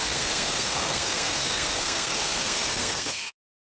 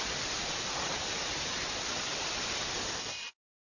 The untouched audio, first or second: second